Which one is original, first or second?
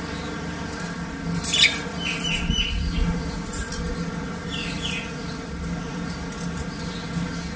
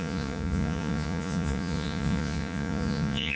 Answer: first